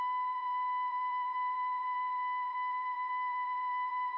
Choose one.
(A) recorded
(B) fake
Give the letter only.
B